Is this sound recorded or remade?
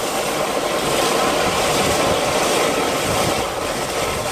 recorded